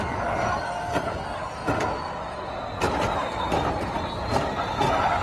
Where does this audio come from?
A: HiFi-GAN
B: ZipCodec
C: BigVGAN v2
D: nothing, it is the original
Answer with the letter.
D